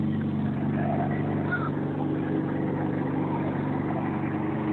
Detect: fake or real real